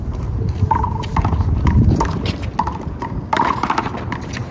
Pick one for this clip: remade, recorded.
recorded